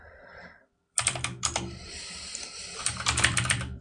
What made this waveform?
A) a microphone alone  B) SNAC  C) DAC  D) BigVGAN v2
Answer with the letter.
D